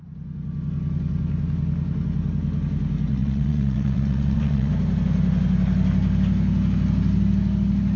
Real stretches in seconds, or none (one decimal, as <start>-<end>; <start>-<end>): 0.0-3.1; 4.7-8.0